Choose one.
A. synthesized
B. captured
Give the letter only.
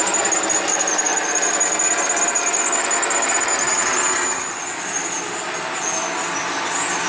B